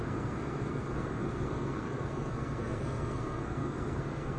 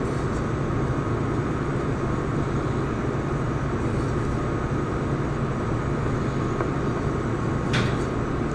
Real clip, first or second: second